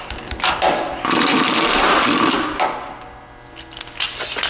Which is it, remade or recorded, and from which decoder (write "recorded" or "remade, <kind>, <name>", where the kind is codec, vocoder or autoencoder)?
recorded